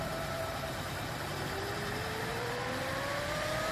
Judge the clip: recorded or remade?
remade